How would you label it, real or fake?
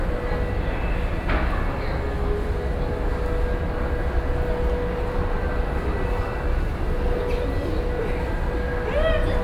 real